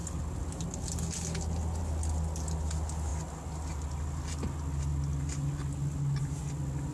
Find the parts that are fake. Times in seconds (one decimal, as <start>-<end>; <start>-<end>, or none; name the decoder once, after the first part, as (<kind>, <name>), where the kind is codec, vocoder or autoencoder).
none